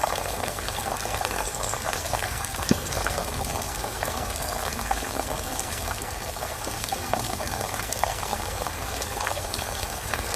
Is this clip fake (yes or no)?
yes